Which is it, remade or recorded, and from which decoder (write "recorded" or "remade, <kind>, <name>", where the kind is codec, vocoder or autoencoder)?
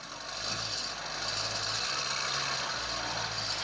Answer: recorded